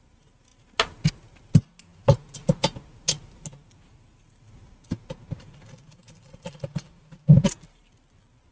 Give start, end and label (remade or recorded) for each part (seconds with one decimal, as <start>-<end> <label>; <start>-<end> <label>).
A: 0.0-8.5 recorded